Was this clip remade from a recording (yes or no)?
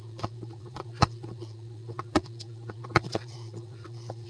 yes